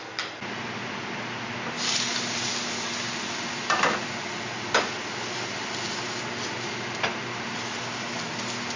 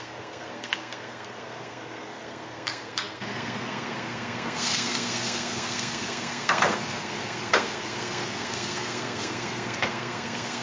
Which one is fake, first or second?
second